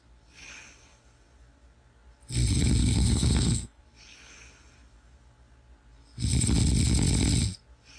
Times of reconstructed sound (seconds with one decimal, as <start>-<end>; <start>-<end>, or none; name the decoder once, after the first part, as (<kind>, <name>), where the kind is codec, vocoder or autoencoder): 2.8-3.8 (codec, SNAC)